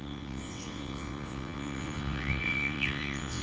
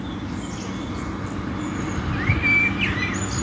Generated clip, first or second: first